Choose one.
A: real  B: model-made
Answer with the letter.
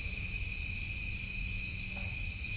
A